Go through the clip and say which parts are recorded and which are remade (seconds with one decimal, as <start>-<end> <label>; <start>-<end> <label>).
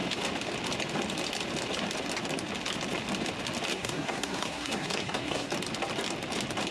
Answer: 0.0-3.7 recorded; 3.7-5.5 remade; 5.5-6.7 recorded